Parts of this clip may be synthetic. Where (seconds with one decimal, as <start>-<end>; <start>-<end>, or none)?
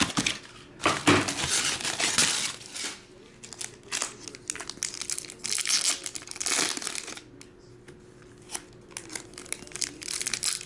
none